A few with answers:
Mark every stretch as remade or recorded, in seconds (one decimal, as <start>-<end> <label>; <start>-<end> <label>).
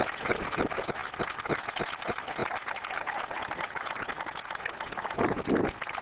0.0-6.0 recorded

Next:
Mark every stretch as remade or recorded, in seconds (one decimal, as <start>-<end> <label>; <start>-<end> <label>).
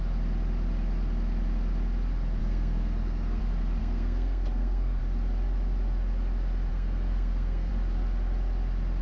0.0-2.4 recorded; 2.4-3.4 remade; 3.4-3.8 recorded; 3.8-5.0 remade; 5.0-6.7 recorded; 6.7-7.7 remade; 7.7-9.0 recorded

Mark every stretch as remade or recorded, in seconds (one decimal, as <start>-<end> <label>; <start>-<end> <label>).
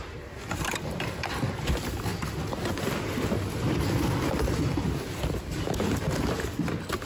0.0-7.1 recorded